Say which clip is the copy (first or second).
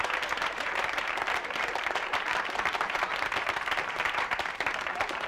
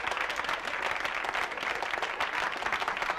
first